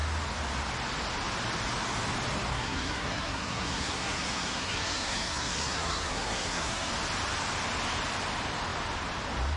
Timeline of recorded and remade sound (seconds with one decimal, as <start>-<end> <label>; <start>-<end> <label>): 0.0-2.5 recorded; 2.5-6.9 remade; 6.9-9.6 recorded